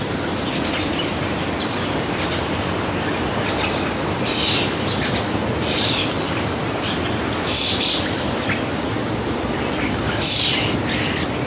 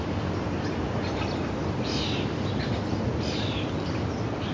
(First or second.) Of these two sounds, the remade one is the first